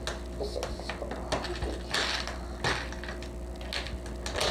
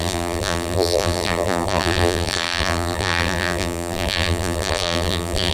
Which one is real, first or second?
first